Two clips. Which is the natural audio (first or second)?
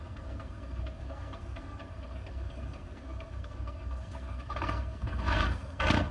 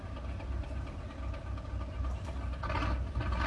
second